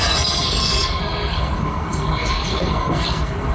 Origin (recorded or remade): remade